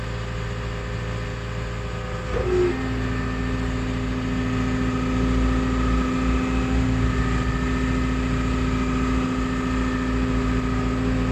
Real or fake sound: real